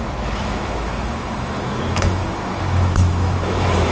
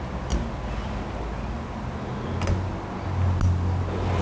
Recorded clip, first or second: second